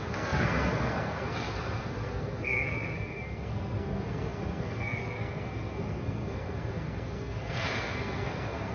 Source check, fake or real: fake